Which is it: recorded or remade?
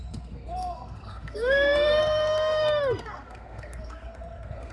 remade